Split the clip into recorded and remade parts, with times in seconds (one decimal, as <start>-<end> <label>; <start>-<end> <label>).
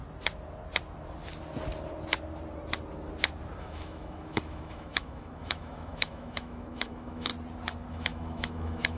0.0-3.6 recorded; 3.6-7.3 remade; 7.3-7.9 recorded; 7.9-9.0 remade